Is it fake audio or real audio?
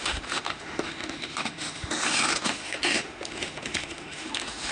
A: fake